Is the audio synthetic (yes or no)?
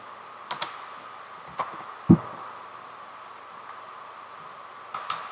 no